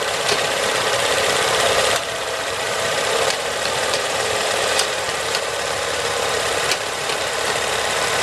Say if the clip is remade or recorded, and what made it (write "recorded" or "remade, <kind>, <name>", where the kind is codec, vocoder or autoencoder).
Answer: remade, vocoder, BigVGAN v2